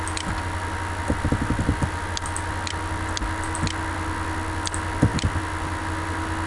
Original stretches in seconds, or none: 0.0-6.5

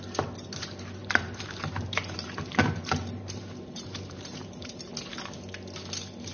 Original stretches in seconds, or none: 0.0-1.0; 4.8-6.3

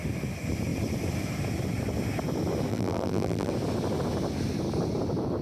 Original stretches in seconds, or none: 0.0-2.7; 3.5-5.4

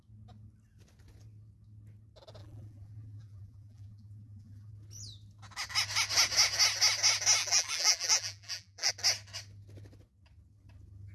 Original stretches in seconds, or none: 0.0-2.4; 4.7-7.4; 8.9-11.1

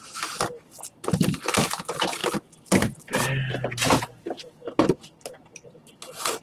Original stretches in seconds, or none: 0.0-6.4

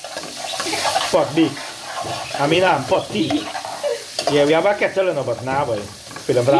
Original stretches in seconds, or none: 3.5-6.6